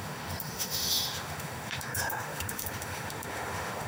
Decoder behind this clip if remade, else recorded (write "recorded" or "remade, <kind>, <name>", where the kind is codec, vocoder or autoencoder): remade, autoencoder, DAC-VAE